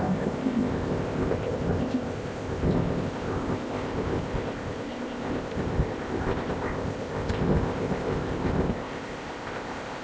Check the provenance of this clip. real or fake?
fake